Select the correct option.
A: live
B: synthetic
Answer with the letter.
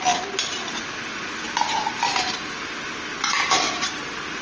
A